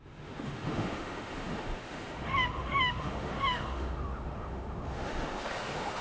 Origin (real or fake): fake